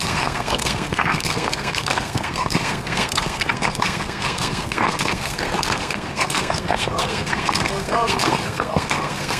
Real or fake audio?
fake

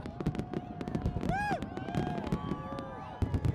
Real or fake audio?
real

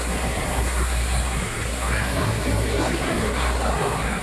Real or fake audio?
fake